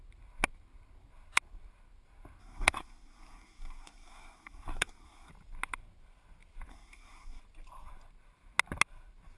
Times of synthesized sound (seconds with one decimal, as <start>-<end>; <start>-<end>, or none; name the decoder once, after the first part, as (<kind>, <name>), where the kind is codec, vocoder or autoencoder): 2.4-5.3 (codec, SNAC); 6.7-7.4